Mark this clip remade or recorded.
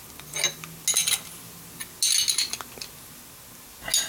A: recorded